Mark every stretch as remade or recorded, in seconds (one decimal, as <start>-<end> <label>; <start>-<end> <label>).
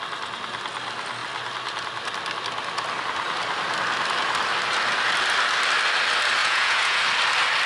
0.0-6.4 recorded; 6.4-7.0 remade; 7.0-7.7 recorded